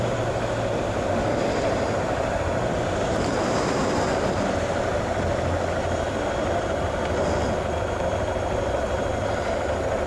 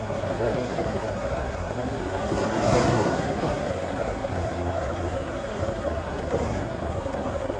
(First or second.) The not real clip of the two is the second